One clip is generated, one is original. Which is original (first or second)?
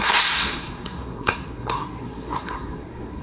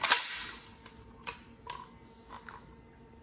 second